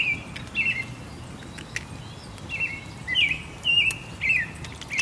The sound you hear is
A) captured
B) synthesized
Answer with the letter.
A